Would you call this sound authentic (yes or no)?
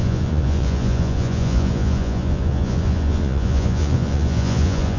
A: no